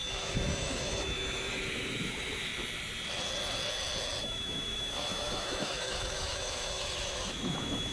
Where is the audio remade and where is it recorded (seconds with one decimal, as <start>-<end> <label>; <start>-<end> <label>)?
0.0-2.5 remade; 2.5-4.2 recorded; 4.2-7.9 remade